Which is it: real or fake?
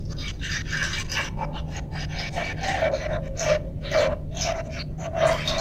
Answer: real